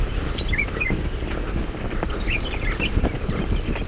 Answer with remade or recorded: recorded